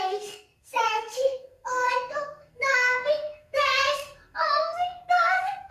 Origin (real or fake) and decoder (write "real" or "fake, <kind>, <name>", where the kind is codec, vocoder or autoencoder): fake, codec, SNAC